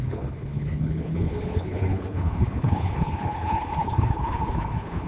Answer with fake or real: fake